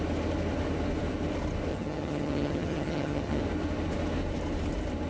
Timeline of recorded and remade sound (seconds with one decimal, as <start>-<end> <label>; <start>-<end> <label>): 0.0-1.7 recorded; 1.7-3.4 remade; 3.4-5.1 recorded